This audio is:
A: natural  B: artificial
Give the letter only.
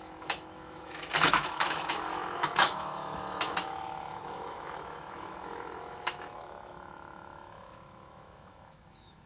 B